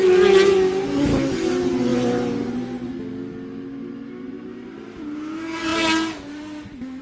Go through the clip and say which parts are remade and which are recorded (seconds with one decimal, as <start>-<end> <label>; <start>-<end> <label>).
0.0-7.0 recorded